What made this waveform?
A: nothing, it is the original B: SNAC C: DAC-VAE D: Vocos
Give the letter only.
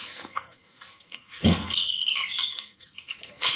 B